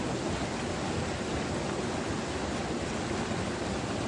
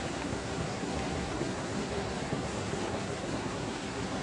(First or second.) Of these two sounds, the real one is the first